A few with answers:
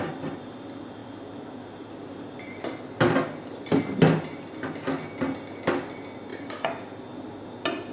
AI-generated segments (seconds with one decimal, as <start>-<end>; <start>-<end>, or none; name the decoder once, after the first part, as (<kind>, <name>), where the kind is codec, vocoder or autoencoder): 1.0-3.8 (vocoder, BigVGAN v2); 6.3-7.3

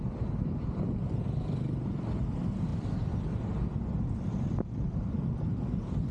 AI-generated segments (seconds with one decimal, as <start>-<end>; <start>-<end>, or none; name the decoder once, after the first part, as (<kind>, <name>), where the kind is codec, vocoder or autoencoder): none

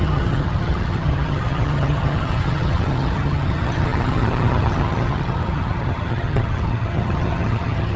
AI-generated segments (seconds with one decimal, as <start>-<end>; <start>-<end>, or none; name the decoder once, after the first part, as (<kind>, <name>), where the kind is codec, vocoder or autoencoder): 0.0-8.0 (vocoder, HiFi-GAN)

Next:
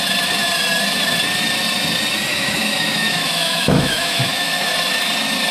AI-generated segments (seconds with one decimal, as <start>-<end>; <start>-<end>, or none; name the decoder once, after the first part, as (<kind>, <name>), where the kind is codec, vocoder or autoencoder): 2.3-4.7 (autoencoder, DAC-VAE)

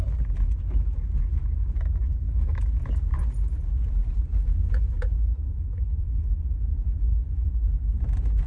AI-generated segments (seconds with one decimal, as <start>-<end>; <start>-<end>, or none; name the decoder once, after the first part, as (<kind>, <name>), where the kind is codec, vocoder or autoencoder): none

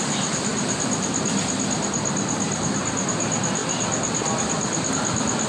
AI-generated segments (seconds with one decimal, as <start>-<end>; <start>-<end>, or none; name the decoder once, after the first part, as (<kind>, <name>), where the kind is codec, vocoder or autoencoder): none